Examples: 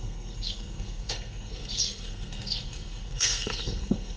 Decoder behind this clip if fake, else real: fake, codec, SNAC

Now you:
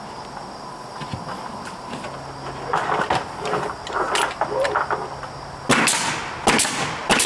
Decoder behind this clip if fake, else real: real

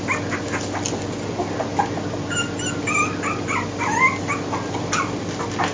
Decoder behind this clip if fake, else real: real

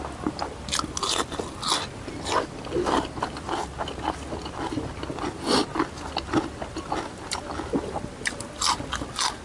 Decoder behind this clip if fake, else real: real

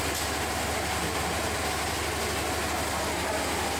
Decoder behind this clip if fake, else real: real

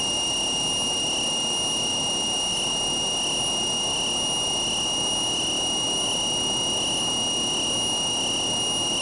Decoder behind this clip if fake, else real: real